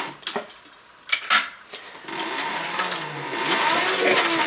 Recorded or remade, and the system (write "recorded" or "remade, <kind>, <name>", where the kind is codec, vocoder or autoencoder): recorded